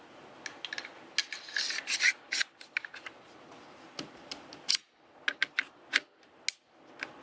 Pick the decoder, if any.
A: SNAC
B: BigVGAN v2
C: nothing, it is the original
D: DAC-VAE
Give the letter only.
C